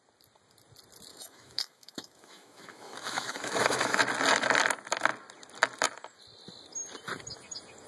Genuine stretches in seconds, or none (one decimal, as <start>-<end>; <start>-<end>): 0.0-1.1; 4.0-7.9